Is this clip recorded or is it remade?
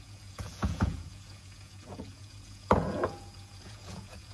remade